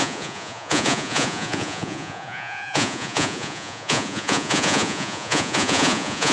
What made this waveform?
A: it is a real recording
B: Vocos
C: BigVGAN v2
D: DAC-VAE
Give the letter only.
B